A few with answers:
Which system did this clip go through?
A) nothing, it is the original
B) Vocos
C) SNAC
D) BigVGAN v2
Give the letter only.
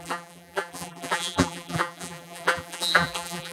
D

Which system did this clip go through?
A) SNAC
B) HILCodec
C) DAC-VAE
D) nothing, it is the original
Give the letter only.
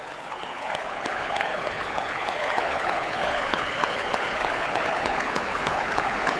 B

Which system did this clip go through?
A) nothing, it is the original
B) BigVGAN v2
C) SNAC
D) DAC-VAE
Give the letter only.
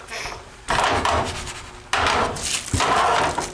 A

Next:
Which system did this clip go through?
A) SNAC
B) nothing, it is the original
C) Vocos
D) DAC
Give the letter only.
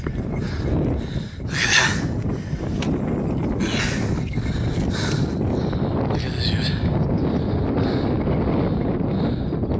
B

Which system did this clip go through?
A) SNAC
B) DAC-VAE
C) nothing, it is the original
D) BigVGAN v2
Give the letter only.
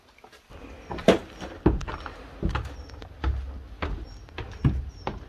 C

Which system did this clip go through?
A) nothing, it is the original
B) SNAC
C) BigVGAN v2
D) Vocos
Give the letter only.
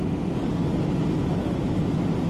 A